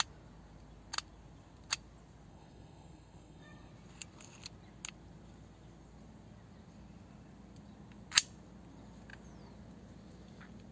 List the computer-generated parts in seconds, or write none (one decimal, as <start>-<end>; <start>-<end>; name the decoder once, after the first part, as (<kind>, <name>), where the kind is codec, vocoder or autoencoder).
2.3-3.7 (codec, SNAC)